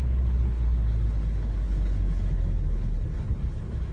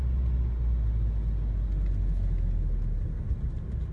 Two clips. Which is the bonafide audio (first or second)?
second